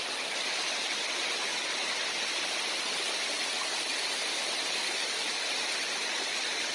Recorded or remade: recorded